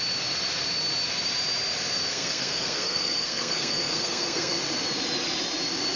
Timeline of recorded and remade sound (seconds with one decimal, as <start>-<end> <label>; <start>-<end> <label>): 0.0-2.1 recorded; 2.1-4.6 remade; 4.6-6.0 recorded